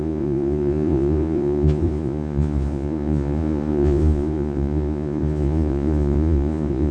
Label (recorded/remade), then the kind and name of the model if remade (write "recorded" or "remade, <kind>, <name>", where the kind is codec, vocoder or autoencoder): remade, vocoder, Vocos